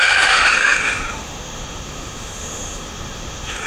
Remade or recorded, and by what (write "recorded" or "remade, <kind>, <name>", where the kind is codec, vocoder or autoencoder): remade, autoencoder, DAC-VAE